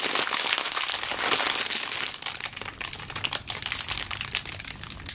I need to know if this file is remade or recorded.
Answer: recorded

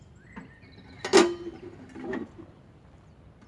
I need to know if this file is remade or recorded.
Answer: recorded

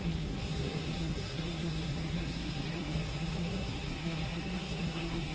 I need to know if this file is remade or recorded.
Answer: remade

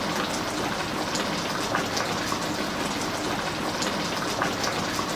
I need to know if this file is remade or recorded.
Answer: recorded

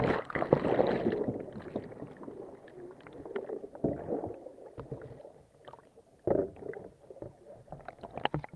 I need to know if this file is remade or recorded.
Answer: recorded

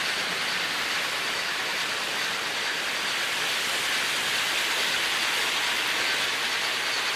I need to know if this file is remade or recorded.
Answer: recorded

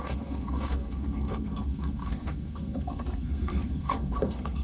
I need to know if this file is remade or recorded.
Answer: remade